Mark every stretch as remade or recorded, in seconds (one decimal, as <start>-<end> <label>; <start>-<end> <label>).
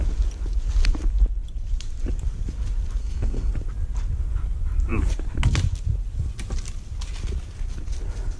0.0-3.0 recorded; 3.0-3.5 remade; 3.5-8.4 recorded